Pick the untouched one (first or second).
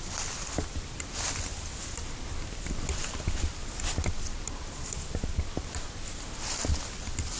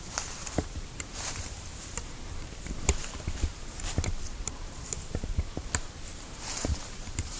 first